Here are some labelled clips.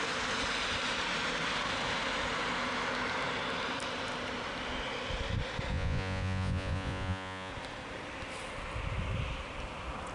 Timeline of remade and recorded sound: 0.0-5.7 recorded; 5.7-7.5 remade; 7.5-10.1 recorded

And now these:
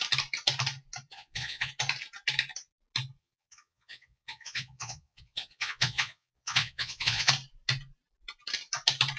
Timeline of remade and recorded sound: 0.0-1.1 recorded; 1.1-1.7 remade; 1.7-3.2 recorded; 3.2-7.3 remade; 7.3-9.2 recorded

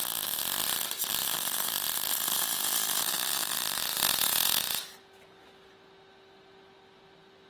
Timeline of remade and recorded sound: 0.0-4.0 recorded; 4.0-4.6 remade; 4.6-7.5 recorded

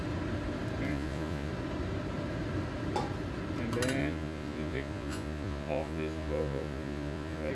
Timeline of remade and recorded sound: 0.0-0.9 recorded; 0.9-1.5 remade; 1.5-4.0 recorded; 4.0-7.5 remade

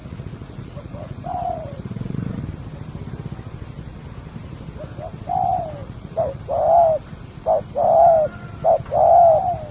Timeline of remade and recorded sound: 0.0-2.4 remade; 2.4-5.8 recorded; 5.8-6.4 remade; 6.4-9.7 recorded

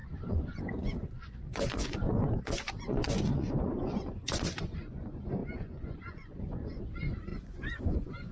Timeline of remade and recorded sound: 0.0-8.3 remade